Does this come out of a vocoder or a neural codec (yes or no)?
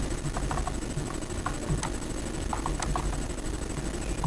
no